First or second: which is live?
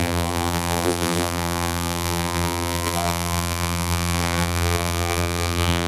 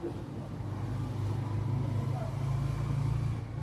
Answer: second